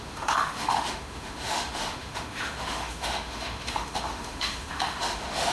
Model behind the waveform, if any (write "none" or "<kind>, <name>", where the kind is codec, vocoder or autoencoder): autoencoder, DAC-VAE